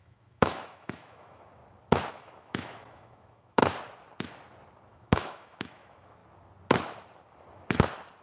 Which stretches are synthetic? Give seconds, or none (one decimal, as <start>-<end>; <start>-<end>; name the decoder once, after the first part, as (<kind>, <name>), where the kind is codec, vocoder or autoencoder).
0.0-1.6 (autoencoder, DAC-VAE); 2.1-3.6; 4.9-6.2